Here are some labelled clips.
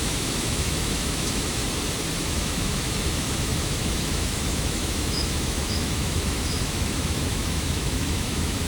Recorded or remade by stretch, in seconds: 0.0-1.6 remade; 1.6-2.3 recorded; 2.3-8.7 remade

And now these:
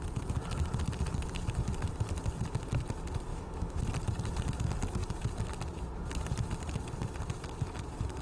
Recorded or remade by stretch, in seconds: 0.0-3.3 recorded; 3.3-3.8 remade; 3.8-8.2 recorded

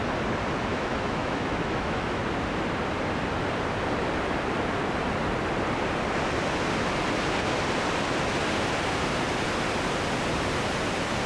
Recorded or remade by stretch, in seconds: 0.0-0.7 recorded; 0.7-2.2 remade; 2.2-11.3 recorded

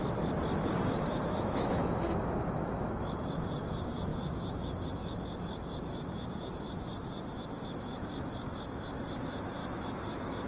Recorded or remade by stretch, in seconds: 0.0-0.6 recorded; 0.6-10.5 remade

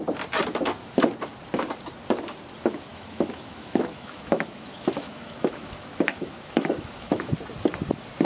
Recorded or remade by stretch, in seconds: 0.0-2.9 recorded; 2.9-7.3 remade; 7.3-8.2 recorded